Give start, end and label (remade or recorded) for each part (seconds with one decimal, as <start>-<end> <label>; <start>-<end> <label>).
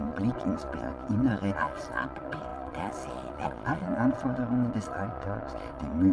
0.0-6.1 remade